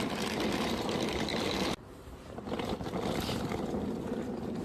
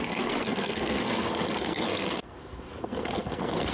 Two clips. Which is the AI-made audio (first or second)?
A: second